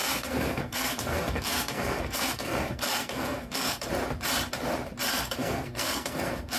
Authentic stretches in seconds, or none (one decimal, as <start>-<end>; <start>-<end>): 3.9-5.1